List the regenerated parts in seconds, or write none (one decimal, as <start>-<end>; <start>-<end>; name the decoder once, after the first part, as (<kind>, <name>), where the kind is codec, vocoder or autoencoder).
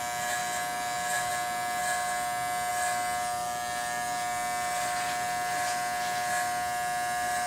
none